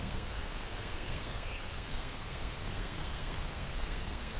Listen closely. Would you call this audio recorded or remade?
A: remade